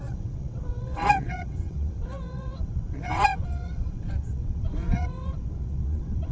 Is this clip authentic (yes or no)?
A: no